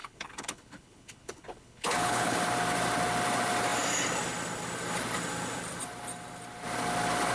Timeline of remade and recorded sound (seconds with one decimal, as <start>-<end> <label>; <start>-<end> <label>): 0.0-2.4 remade; 2.4-7.3 recorded

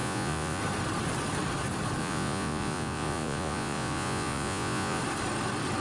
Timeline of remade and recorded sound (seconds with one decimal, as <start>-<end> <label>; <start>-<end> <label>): 0.0-0.6 remade; 0.6-2.0 recorded; 2.0-5.0 remade; 5.0-5.8 recorded

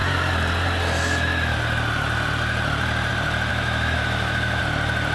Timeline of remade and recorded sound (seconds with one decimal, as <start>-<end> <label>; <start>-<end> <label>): 0.0-3.5 recorded; 3.5-4.6 remade; 4.6-5.1 recorded

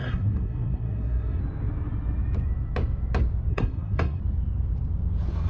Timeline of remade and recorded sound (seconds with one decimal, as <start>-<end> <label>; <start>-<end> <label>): 0.0-1.4 remade; 1.4-3.5 recorded; 3.5-4.2 remade; 4.2-5.5 recorded